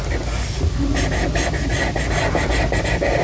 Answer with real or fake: real